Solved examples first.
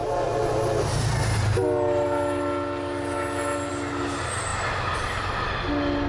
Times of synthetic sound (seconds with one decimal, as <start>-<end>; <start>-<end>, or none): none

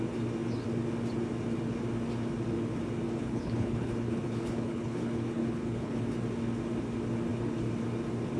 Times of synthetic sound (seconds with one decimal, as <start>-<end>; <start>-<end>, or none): 3.2-6.0

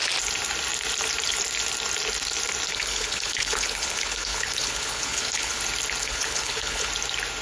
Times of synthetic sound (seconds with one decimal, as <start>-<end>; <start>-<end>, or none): 2.7-5.6; 6.0-6.9

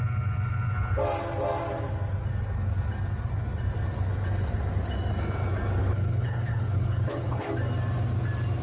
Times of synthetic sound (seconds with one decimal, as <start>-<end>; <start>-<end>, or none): 5.8-7.5

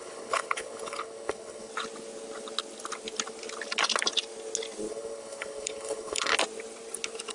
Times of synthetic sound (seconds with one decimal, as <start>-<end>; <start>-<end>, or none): 0.0-1.7; 4.9-6.3